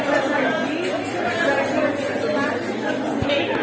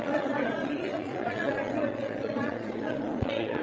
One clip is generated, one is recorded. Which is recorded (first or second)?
first